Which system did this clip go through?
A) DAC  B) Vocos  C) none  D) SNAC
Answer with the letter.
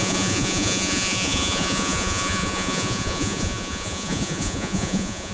B